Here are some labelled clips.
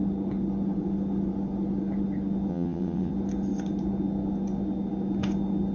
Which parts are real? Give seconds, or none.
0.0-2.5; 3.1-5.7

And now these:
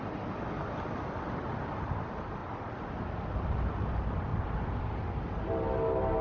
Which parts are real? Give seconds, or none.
0.0-4.3; 5.1-6.2

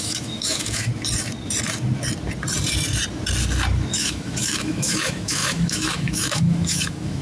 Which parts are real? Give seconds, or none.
0.9-3.9

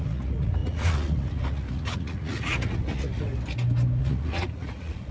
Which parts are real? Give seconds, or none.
3.3-4.0

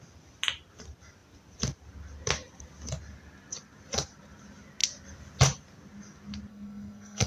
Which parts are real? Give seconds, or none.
0.0-6.5